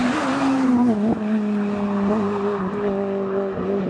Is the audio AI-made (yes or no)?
no